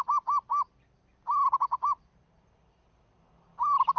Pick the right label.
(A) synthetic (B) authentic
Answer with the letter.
B